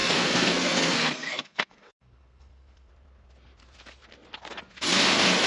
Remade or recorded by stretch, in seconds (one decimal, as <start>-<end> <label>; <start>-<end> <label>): 0.0-2.9 remade; 2.9-5.5 recorded

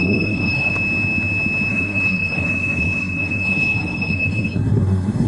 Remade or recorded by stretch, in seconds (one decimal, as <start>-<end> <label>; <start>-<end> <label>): 0.0-0.7 remade; 0.7-1.7 recorded; 1.7-5.3 remade

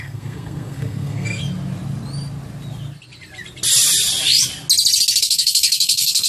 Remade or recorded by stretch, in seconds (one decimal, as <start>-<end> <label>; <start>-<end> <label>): 0.0-1.4 remade; 1.4-5.2 recorded; 5.2-6.3 remade